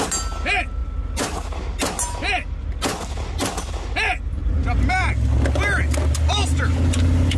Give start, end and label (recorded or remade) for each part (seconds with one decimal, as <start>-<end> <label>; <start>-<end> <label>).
0.0-7.4 recorded